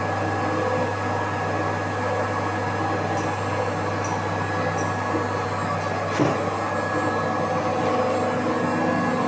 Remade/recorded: recorded